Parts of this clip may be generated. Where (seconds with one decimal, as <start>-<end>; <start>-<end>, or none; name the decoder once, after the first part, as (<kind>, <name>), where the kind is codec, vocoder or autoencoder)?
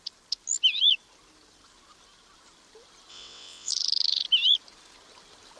3.1-3.7 (vocoder, WaveNeXt)